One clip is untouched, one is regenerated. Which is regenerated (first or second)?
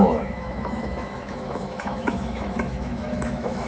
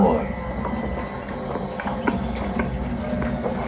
first